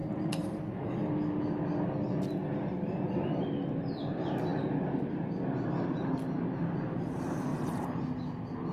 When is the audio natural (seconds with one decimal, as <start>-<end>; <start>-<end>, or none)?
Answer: 0.9-7.5; 8.0-8.7